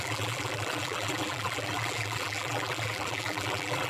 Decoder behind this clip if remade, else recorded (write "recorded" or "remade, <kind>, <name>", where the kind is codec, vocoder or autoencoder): remade, vocoder, BigVGAN v2